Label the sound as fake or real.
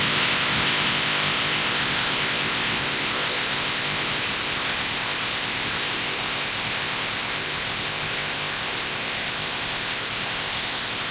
fake